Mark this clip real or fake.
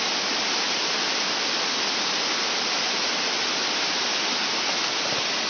real